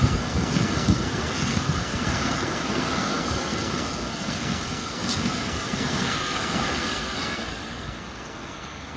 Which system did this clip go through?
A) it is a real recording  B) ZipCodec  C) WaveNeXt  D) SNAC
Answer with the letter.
D